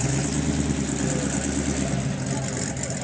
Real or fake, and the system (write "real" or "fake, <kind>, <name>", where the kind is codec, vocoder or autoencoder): real